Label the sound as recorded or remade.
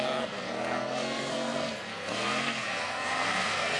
remade